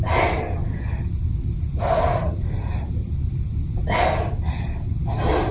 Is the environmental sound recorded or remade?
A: recorded